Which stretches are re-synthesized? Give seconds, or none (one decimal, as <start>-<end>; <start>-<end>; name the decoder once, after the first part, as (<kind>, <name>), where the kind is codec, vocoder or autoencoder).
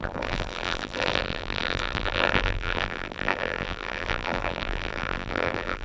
0.0-5.8 (vocoder, BigVGAN v2)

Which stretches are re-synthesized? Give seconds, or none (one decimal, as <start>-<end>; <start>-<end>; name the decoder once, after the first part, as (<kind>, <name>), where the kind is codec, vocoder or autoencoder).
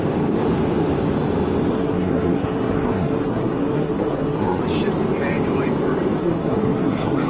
1.7-4.6 (codec, SNAC); 6.2-7.3